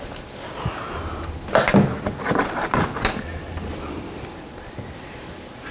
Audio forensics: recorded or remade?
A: recorded